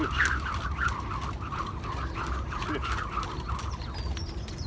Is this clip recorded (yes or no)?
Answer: yes